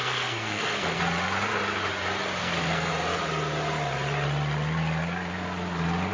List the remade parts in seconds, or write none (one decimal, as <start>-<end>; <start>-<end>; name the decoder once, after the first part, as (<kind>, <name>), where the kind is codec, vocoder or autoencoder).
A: 0.0-1.0 (codec, SNAC); 2.4-2.9